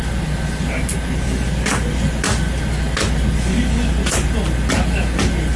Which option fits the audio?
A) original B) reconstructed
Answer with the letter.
A